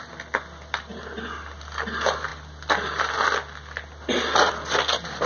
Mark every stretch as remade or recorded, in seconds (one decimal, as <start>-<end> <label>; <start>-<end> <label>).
0.0-5.3 recorded